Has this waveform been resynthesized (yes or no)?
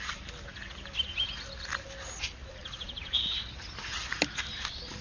no